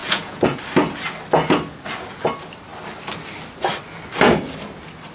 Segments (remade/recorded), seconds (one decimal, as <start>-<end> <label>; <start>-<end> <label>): 0.0-0.6 remade; 0.6-5.1 recorded